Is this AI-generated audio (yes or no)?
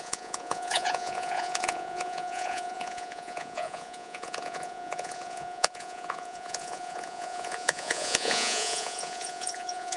yes